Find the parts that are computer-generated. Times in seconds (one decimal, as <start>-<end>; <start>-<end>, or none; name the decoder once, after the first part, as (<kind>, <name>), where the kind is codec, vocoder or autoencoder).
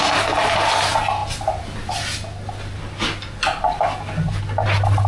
none